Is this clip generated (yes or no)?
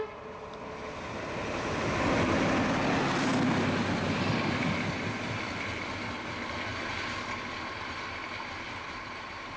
no